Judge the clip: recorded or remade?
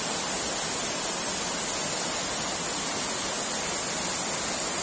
recorded